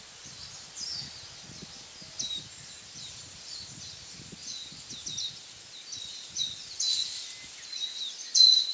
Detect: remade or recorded recorded